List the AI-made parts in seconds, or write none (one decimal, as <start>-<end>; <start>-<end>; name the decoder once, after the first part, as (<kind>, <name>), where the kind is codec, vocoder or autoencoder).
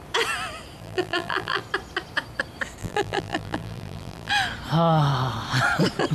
0.8-1.6 (vocoder, BigVGAN v2); 2.8-4.3